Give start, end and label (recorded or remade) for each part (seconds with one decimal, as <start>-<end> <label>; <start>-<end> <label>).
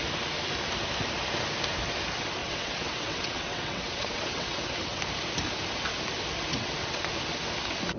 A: 0.0-2.4 recorded; 2.4-5.0 remade; 5.0-6.5 recorded; 6.5-7.1 remade; 7.1-8.0 recorded